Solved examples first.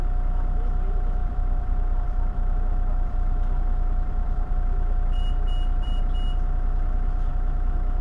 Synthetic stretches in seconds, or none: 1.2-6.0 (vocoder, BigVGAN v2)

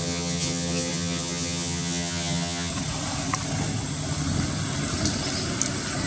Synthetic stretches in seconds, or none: 0.0-2.7 (vocoder, HiFi-GAN)

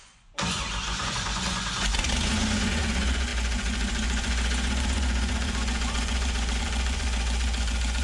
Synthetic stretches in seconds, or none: 0.0-8.0 (vocoder, Vocos)

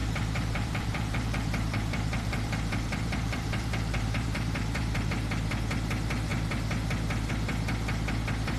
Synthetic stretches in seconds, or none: 0.0-5.1 (vocoder, BigVGAN v2)

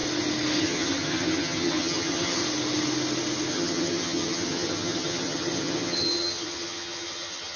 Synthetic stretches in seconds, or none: 0.6-2.4 (vocoder, HiFi-GAN); 3.5-7.6

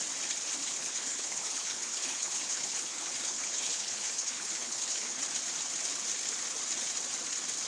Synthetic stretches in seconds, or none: 0.6-5.2 (codec, HILCodec)